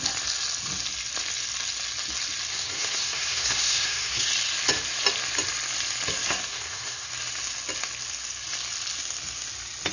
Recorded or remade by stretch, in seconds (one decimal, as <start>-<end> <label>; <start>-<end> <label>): 0.0-2.5 recorded; 2.5-4.3 remade; 4.3-6.5 recorded; 6.5-7.1 remade; 7.1-9.9 recorded